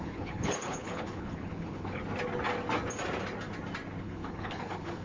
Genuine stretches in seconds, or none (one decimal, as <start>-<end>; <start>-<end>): 2.0-4.0